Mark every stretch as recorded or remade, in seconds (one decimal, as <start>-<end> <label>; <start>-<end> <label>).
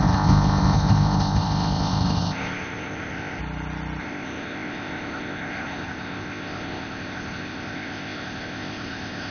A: 0.0-3.4 remade; 3.4-4.0 recorded; 4.0-9.3 remade